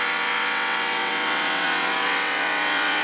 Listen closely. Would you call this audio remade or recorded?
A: remade